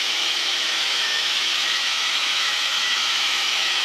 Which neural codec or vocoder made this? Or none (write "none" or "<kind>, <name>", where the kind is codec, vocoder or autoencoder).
autoencoder, DAC-VAE